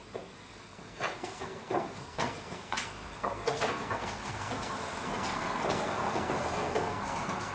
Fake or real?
fake